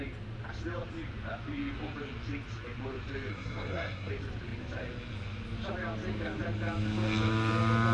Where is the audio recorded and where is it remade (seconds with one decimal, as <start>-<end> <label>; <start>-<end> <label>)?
0.0-3.3 recorded; 3.3-4.1 remade; 4.1-7.9 recorded